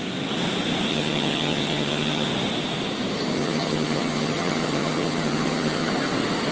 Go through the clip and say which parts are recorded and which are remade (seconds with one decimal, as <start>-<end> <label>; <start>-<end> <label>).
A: 0.0-0.9 recorded; 0.9-2.3 remade; 2.3-3.3 recorded; 3.3-5.9 remade; 5.9-6.5 recorded